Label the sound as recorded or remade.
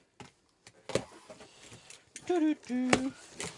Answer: recorded